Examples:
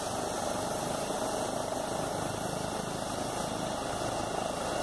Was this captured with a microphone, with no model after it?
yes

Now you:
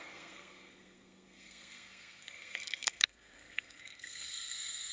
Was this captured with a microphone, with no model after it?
no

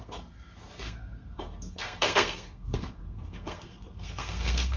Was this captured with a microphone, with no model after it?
no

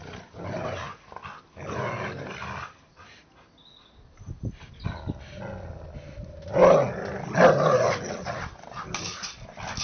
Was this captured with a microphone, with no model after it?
yes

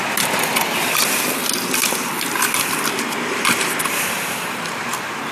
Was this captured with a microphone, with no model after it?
yes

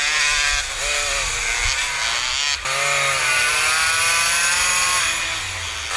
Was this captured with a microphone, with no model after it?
yes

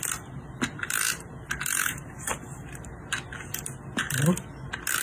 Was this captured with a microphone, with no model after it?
yes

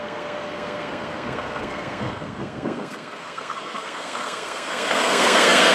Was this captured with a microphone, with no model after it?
no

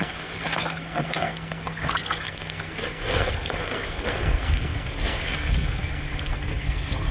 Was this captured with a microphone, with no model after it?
no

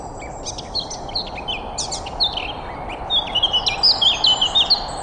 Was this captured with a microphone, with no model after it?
yes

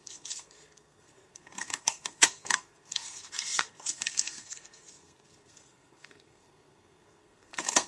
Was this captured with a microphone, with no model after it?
no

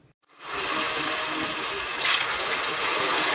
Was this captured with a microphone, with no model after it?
yes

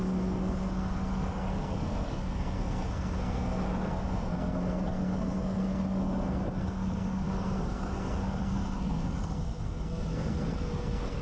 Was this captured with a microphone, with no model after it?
no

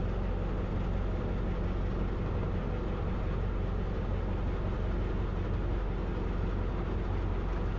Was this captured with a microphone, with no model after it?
yes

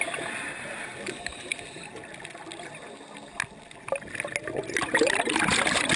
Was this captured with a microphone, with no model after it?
yes